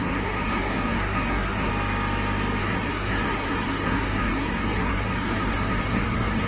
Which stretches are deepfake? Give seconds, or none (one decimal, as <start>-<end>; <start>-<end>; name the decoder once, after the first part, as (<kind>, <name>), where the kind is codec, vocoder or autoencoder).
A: 0.0-1.7 (codec, SNAC); 2.6-6.5

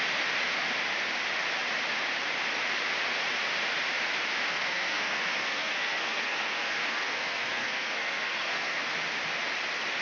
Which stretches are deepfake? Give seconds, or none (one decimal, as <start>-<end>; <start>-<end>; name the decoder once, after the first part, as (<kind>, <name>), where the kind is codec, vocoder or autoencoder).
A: 4.5-8.8 (codec, SNAC)